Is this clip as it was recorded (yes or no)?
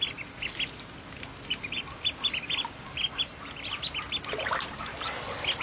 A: yes